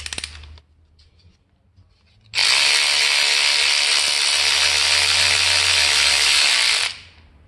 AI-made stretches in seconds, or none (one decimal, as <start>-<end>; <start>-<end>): none